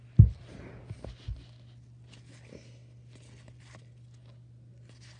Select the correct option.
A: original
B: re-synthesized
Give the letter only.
A